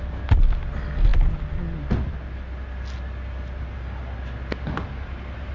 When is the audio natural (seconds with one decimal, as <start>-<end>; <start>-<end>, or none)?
0.0-5.5